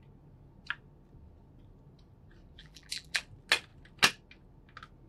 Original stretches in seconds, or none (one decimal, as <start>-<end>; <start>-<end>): 0.0-2.6; 3.2-5.1